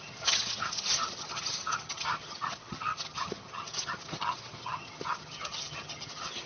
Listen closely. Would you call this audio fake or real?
fake